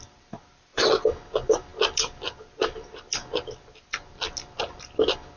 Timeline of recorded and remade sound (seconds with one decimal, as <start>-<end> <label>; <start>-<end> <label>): 0.0-5.4 recorded